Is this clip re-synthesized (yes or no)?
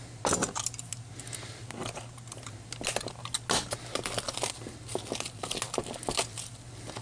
no